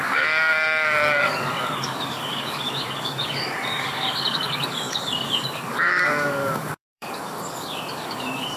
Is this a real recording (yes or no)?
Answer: no